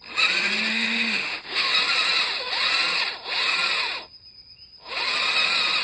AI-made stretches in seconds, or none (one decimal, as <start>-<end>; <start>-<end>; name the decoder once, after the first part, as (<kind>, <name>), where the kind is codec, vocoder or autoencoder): 0.7-1.7 (autoencoder, DAC-VAE)